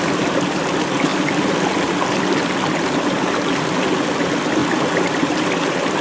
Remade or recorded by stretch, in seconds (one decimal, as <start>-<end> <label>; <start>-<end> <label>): 0.0-1.1 recorded; 1.1-1.8 remade; 1.8-4.6 recorded; 4.6-6.0 remade